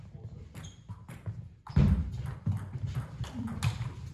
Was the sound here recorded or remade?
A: recorded